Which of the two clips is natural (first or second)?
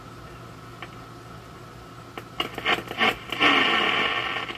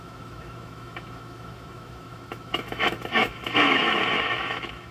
first